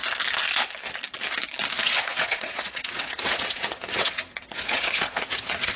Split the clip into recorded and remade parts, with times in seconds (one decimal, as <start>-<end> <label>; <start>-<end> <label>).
0.0-1.8 recorded; 1.8-5.8 remade